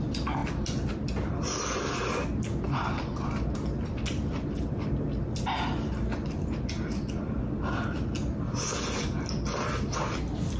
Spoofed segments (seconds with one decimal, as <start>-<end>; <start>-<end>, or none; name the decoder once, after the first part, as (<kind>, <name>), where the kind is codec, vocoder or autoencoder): none